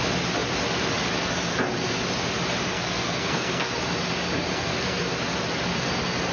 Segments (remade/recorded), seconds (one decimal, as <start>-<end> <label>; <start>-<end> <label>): 0.0-2.7 recorded; 2.7-3.8 remade; 3.8-4.5 recorded; 4.5-5.0 remade; 5.0-6.3 recorded

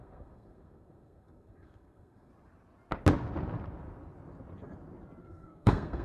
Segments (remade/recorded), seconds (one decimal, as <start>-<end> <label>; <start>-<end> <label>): 0.0-2.3 remade; 2.3-5.2 recorded; 5.2-6.0 remade

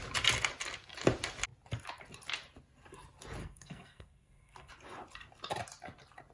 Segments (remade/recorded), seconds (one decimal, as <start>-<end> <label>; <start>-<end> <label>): 0.0-3.4 recorded; 3.4-4.7 remade; 4.7-6.3 recorded

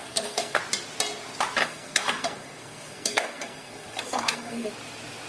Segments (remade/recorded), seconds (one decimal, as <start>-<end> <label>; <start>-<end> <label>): 0.0-0.6 remade; 0.6-1.6 recorded; 1.6-4.7 remade; 4.7-5.3 recorded

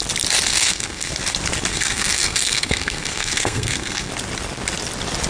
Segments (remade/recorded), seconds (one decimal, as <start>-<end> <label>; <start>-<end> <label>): 0.0-0.5 recorded; 0.5-1.1 remade; 1.1-1.7 recorded; 1.7-4.1 remade; 4.1-5.3 recorded

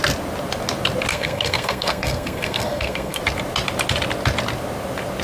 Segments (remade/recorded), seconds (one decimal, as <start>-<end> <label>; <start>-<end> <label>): 0.0-1.1 recorded; 1.1-3.2 remade; 3.2-5.2 recorded

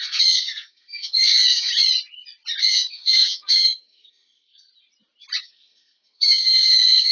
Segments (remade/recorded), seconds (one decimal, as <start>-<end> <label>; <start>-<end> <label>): 0.0-1.7 remade; 1.7-2.6 recorded; 2.6-4.7 remade; 4.7-5.4 recorded; 5.4-7.1 remade

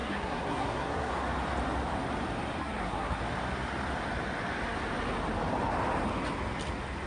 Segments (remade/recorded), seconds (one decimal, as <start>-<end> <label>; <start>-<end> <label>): 0.0-1.1 remade; 1.1-2.6 recorded; 2.6-3.2 remade; 3.2-7.1 recorded